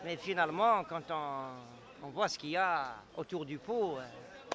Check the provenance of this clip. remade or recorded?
recorded